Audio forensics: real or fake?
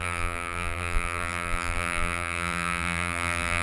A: fake